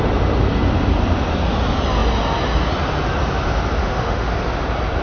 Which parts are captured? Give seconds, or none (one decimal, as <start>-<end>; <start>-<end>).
0.0-3.8; 4.3-5.0